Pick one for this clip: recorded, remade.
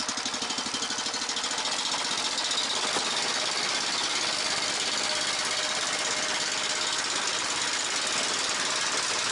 recorded